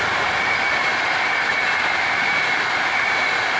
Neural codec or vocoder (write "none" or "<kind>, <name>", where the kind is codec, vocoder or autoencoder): none